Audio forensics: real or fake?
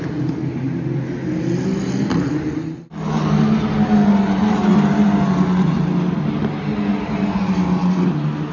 real